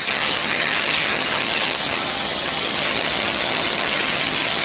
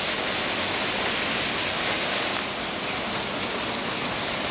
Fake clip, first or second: first